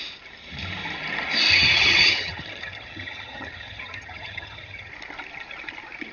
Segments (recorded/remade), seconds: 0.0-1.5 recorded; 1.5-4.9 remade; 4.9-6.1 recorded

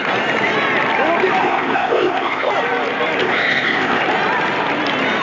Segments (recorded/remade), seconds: 0.0-1.4 recorded; 1.4-2.5 remade; 2.5-3.2 recorded; 3.2-4.0 remade; 4.0-5.2 recorded